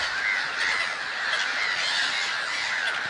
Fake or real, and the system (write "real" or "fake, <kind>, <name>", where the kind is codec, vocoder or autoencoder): real